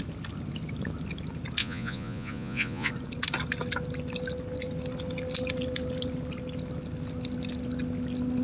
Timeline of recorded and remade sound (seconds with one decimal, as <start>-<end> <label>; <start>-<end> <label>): 0.0-1.6 recorded; 1.6-2.9 remade; 2.9-8.4 recorded